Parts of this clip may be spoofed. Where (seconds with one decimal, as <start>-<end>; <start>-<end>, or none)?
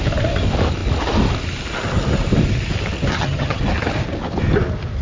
3.1-3.6